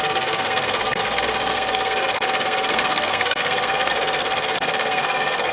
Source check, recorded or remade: remade